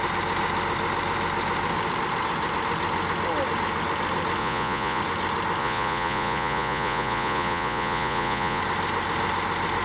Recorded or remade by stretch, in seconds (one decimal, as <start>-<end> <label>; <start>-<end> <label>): 0.0-4.4 recorded; 4.4-5.0 remade; 5.0-5.6 recorded; 5.6-8.6 remade; 8.6-9.8 recorded